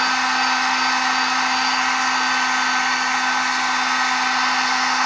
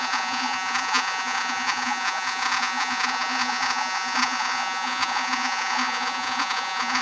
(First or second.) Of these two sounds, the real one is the first